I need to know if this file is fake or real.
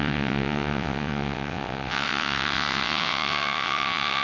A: fake